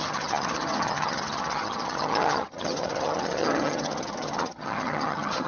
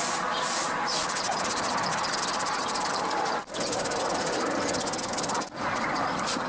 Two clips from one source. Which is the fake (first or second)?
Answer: first